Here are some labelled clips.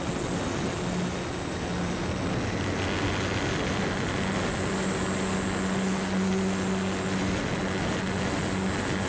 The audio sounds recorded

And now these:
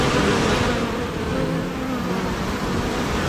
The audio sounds recorded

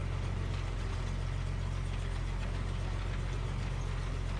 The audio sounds recorded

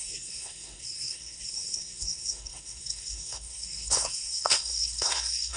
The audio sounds remade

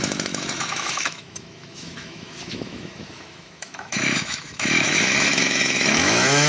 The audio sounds remade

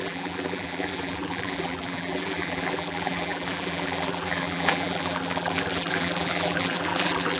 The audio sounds remade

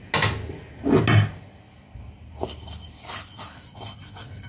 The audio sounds recorded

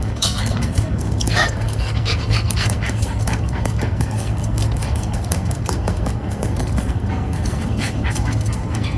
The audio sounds remade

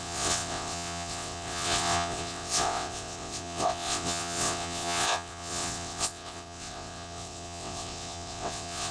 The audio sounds remade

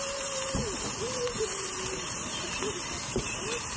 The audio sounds remade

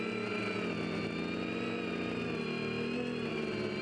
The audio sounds recorded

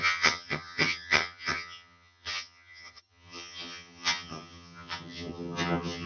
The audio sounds remade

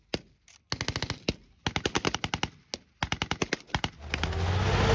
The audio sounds recorded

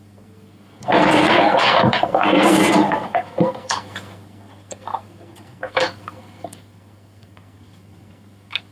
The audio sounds remade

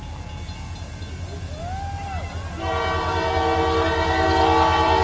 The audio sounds recorded